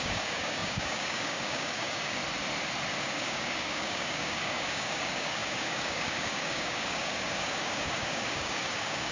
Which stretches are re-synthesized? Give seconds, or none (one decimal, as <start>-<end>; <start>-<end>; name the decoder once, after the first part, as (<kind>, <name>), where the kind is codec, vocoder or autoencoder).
0.0-2.2 (codec, DAC); 3.0-9.1